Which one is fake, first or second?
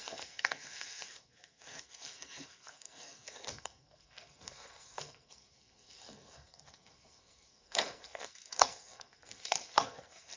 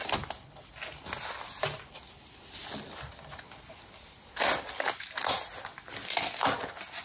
first